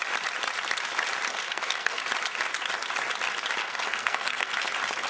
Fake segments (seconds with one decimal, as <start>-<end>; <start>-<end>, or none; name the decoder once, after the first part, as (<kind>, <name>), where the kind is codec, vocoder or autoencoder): 1.3-2.0 (codec, SNAC); 3.6-4.5